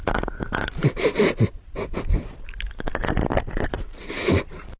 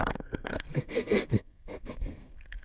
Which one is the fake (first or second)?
second